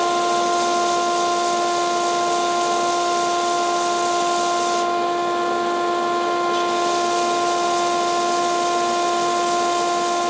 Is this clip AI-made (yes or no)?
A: no